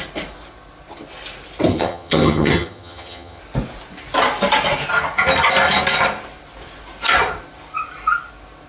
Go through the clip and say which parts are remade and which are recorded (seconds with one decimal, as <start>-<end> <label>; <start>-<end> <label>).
0.0-1.7 recorded; 1.7-3.4 remade; 3.4-8.7 recorded